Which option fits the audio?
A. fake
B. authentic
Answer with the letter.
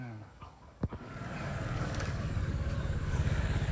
A